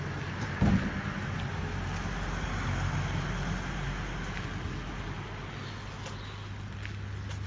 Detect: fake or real real